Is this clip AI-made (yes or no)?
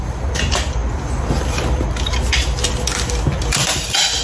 no